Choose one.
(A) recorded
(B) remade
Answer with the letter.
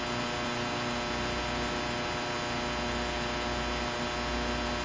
A